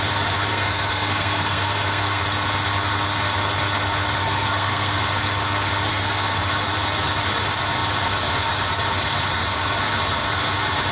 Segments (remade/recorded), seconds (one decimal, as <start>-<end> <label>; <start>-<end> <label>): 0.0-0.5 recorded; 0.5-2.2 remade; 2.2-4.2 recorded; 4.2-5.0 remade; 5.0-5.9 recorded; 5.9-6.5 remade; 6.5-10.9 recorded